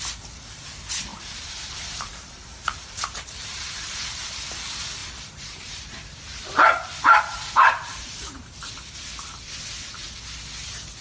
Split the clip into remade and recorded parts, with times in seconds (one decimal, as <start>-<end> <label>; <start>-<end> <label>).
0.0-1.1 recorded; 1.1-4.3 remade; 4.3-5.0 recorded; 5.0-8.7 remade; 8.7-11.0 recorded